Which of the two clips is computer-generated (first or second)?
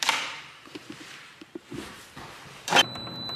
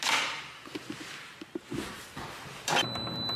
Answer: first